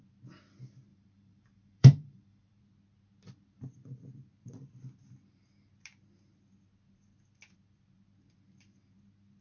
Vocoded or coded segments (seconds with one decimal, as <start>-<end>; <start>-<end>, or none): 0.9-2.6